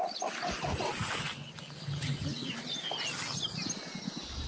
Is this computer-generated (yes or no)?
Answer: no